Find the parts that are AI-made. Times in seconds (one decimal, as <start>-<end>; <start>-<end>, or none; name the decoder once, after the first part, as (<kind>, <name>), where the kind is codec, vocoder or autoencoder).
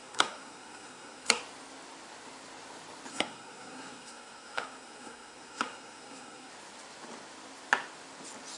0.0-1.4 (codec, SNAC); 3.1-6.5